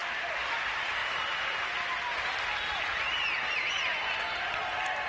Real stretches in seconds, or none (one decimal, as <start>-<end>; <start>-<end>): 0.6-5.1